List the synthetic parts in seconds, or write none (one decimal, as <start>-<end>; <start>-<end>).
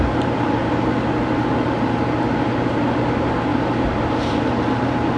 0.0-0.6; 2.4-5.2